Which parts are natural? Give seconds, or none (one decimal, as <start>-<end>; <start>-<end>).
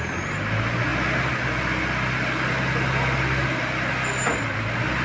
0.0-5.0